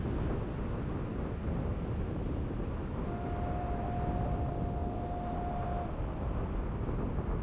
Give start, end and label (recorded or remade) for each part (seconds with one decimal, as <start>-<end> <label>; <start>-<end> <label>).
0.0-7.4 recorded